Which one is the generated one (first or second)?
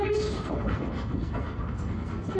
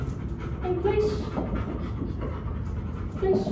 first